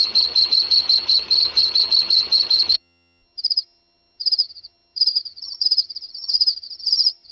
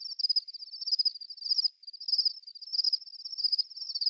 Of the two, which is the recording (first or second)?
second